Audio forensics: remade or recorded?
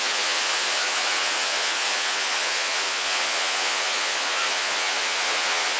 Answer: remade